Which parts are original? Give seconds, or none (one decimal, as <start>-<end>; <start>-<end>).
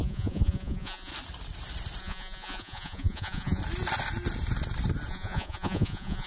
1.1-2.0; 3.6-5.1